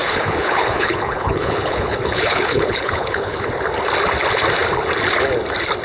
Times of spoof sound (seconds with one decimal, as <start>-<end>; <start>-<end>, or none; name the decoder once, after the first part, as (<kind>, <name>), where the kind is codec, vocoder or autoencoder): 0.0-3.5 (codec, HILCodec)